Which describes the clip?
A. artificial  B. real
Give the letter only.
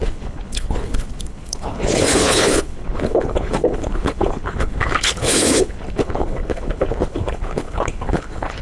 A